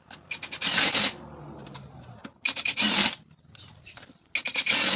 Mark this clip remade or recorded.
recorded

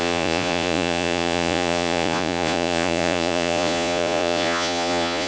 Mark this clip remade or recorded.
remade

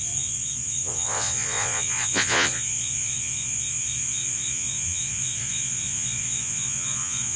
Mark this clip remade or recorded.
remade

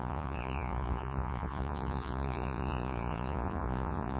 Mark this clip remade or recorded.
remade